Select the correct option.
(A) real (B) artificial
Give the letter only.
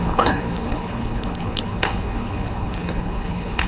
B